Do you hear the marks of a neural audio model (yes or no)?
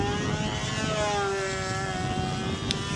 no